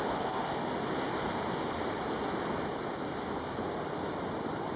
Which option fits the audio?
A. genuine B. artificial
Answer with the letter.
A